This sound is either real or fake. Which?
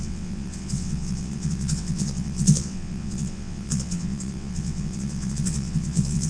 fake